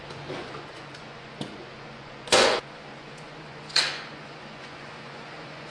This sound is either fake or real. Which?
fake